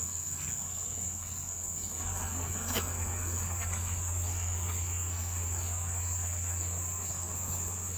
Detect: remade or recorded remade